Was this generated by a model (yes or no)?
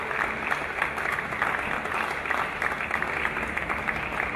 no